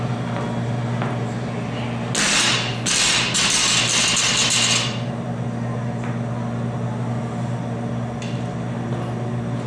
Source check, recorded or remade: recorded